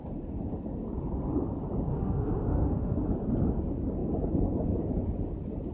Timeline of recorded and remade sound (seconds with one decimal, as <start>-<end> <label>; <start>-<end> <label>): 0.0-1.9 recorded; 1.9-3.0 remade; 3.0-5.7 recorded